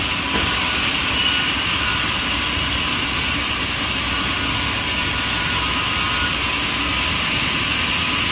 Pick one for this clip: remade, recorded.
recorded